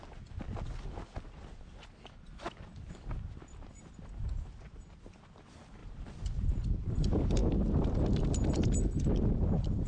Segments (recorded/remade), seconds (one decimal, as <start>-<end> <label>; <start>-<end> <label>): 0.0-5.8 recorded; 5.8-6.5 remade; 6.5-9.9 recorded